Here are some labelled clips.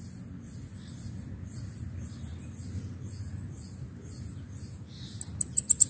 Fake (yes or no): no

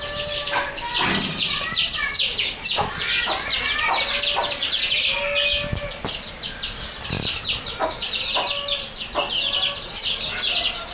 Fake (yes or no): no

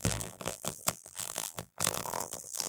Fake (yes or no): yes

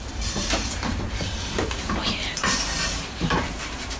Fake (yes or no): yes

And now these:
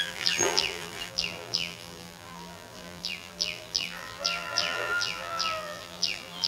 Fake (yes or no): yes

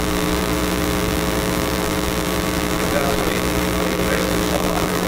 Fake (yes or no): yes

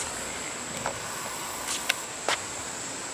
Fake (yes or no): no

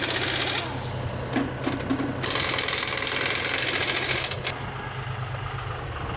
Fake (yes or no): no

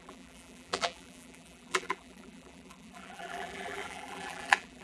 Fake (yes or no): yes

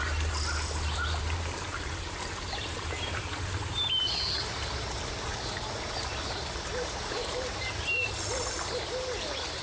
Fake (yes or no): yes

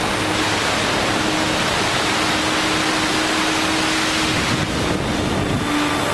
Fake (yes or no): no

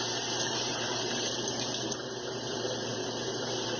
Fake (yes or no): yes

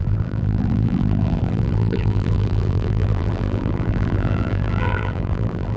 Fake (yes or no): yes